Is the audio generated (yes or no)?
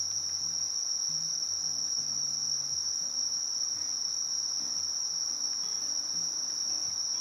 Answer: no